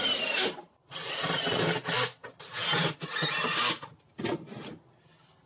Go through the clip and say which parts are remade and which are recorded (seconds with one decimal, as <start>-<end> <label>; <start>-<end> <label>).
0.0-1.0 recorded; 1.0-1.6 remade; 1.6-5.5 recorded